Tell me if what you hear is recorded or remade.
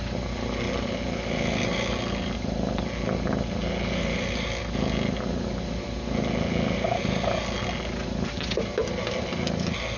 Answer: recorded